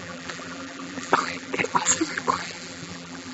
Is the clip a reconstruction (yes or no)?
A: yes